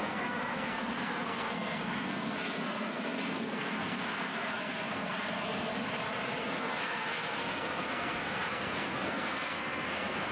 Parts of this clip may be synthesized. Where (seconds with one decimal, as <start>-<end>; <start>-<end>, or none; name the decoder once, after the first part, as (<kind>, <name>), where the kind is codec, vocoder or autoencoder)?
0.0-5.7 (codec, SNAC); 6.4-10.3